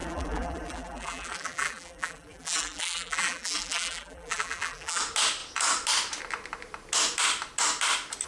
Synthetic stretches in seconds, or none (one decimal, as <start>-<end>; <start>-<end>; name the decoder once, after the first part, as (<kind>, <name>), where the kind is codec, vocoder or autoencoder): 0.0-5.0 (vocoder, BigVGAN v2)